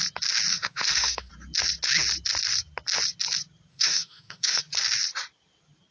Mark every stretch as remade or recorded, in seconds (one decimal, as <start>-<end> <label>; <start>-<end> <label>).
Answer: 0.0-0.5 recorded; 0.5-1.3 remade; 1.3-3.7 recorded; 3.7-4.6 remade; 4.6-5.9 recorded

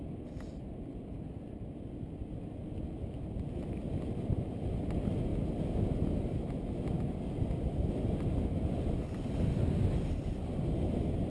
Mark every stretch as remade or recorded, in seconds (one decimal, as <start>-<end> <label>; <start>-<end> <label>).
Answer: 0.0-11.3 recorded

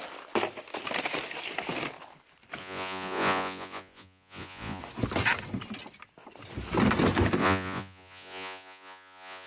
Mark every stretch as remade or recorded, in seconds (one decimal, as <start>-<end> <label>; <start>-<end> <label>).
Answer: 0.0-2.6 recorded; 2.6-4.8 remade; 4.8-7.4 recorded; 7.4-9.5 remade

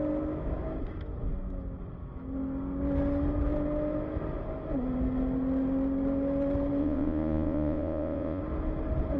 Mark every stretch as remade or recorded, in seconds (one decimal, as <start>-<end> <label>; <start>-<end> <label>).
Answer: 0.0-6.8 recorded; 6.8-8.4 remade; 8.4-9.2 recorded

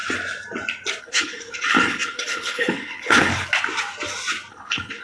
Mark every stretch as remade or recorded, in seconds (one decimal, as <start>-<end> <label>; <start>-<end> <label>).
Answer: 0.0-1.0 recorded; 1.0-3.3 remade; 3.3-4.5 recorded; 4.5-5.0 remade

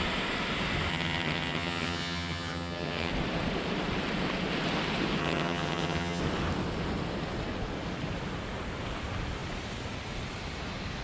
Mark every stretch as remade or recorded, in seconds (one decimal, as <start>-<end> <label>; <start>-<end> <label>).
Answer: 0.0-0.9 recorded; 0.9-3.1 remade; 3.1-5.2 recorded; 5.2-6.2 remade; 6.2-11.0 recorded

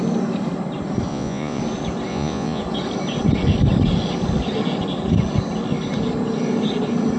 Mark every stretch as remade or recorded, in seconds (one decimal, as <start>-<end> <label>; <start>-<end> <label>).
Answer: 0.0-1.1 recorded; 1.1-1.6 remade; 1.6-2.1 recorded; 2.1-2.6 remade; 2.6-7.2 recorded